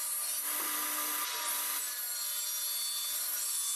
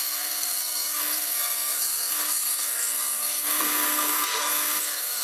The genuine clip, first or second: first